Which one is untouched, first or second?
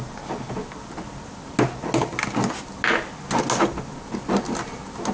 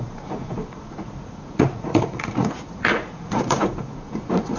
first